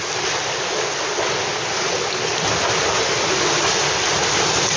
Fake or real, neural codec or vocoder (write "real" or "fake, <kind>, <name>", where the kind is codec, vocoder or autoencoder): real